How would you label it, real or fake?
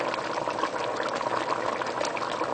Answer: real